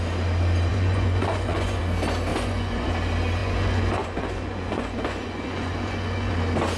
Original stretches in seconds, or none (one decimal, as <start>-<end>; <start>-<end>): 0.0-0.7; 1.8-2.3; 2.9-3.4; 6.3-6.8